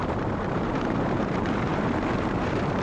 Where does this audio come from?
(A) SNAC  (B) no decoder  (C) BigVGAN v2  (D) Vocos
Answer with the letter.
C